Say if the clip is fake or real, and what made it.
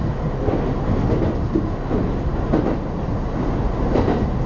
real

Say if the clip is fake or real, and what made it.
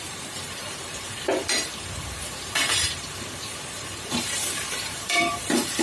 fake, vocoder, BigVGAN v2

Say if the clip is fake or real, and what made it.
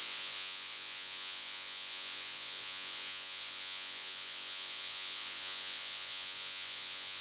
fake, vocoder, Vocos